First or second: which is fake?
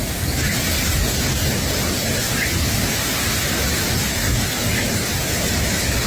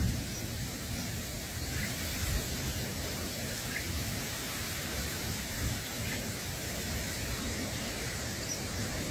second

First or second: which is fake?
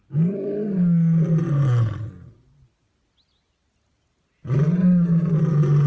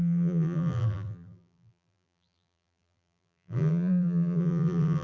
second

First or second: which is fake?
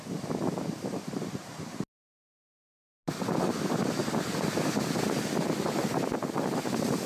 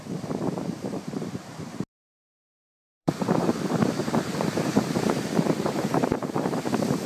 second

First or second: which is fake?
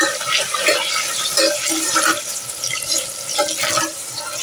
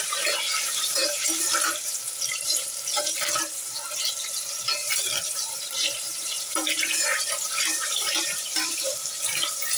second